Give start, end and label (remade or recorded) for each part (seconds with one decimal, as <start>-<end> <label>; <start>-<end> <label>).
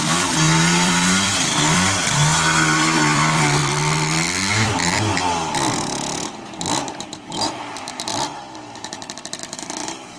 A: 0.0-3.6 remade; 3.6-4.5 recorded; 4.5-5.1 remade; 5.1-6.9 recorded; 6.9-10.2 remade